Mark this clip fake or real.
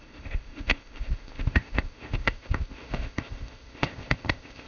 fake